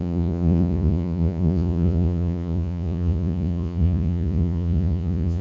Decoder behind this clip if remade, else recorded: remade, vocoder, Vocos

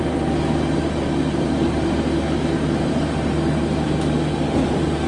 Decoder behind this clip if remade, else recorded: recorded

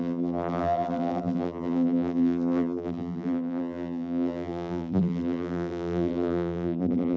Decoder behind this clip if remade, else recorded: remade, vocoder, BigVGAN v2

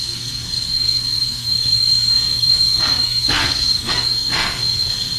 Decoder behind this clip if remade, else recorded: remade, codec, SNAC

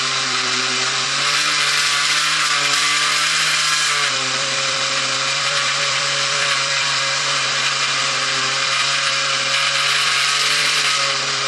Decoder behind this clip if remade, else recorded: remade, vocoder, BigVGAN v2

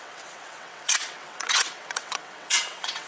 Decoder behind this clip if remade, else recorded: remade, vocoder, WaveNeXt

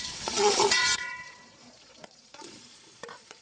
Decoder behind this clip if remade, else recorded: remade, vocoder, Vocos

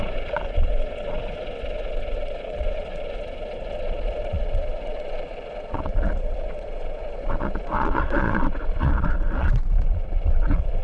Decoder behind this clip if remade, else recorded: remade, vocoder, Vocos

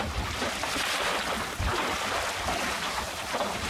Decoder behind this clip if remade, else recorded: recorded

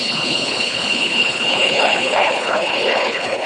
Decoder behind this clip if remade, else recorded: remade, codec, HILCodec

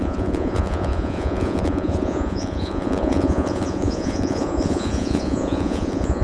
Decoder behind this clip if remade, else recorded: remade, vocoder, Vocos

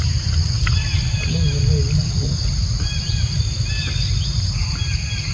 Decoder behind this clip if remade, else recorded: recorded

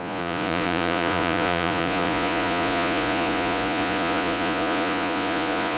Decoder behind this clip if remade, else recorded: remade, vocoder, Vocos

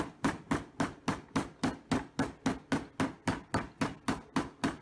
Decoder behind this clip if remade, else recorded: recorded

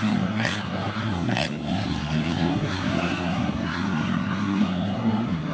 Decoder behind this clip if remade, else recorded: remade, codec, SNAC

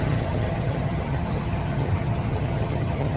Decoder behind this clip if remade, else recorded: remade, vocoder, HiFi-GAN